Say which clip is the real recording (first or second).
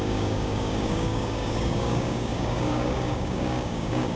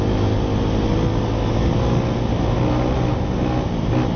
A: second